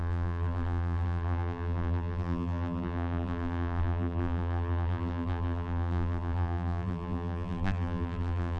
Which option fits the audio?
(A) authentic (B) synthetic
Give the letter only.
B